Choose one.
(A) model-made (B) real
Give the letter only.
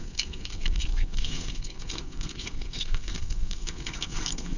A